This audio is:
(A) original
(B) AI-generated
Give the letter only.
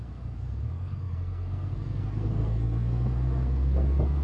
B